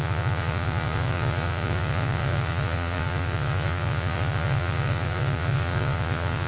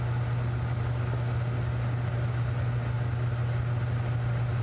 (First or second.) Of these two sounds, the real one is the second